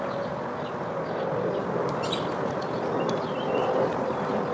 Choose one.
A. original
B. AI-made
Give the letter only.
A